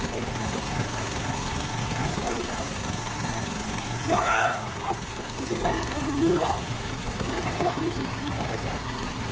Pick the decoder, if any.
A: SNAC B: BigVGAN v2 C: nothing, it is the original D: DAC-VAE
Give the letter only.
A